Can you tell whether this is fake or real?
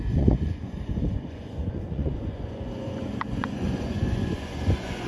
fake